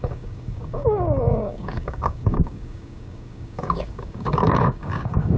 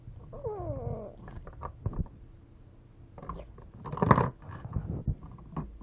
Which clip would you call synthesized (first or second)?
first